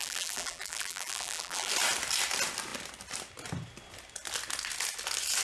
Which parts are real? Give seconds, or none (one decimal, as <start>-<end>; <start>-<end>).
1.7-5.4